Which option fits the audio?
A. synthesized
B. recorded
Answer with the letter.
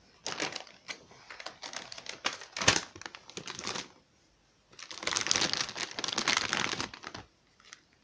B